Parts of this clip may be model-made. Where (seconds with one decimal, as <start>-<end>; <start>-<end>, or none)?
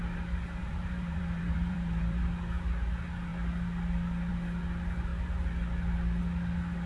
0.6-2.3